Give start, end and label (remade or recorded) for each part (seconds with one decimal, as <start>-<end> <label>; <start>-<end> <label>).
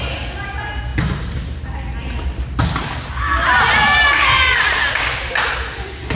0.0-6.1 recorded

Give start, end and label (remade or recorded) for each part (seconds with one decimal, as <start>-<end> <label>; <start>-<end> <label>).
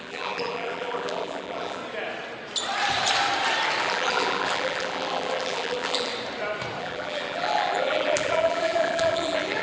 0.0-1.8 remade; 1.8-3.8 recorded; 3.8-6.1 remade; 6.1-6.8 recorded; 6.8-9.6 remade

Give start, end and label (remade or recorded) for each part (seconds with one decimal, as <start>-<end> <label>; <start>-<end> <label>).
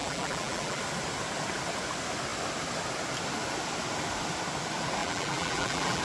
0.0-0.8 remade; 0.8-5.0 recorded; 5.0-6.0 remade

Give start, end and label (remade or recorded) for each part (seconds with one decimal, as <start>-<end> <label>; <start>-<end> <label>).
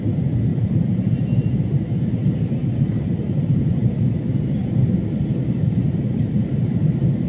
0.0-0.5 recorded; 0.5-2.1 remade; 2.1-2.6 recorded; 2.6-7.3 remade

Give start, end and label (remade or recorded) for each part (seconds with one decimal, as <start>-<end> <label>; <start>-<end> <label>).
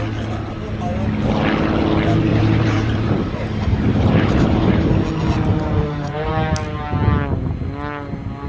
0.0-2.3 recorded; 2.3-4.9 remade; 4.9-5.5 recorded; 5.5-6.3 remade; 6.3-8.5 recorded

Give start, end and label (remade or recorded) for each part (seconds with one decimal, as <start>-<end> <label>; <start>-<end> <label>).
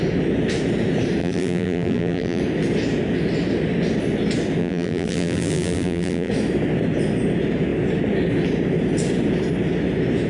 0.0-1.2 recorded; 1.2-2.4 remade; 2.4-4.6 recorded; 4.6-6.3 remade; 6.3-10.3 recorded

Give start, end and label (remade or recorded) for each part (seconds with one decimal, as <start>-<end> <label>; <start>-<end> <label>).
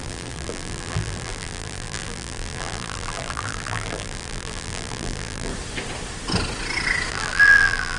0.0-5.5 remade; 5.5-7.1 recorded; 7.1-8.0 remade